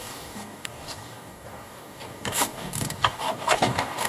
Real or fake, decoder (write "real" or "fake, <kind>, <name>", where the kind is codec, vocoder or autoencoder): fake, codec, DAC